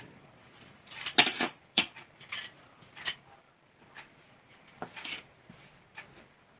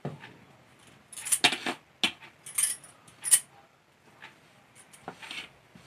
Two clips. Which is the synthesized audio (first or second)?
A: first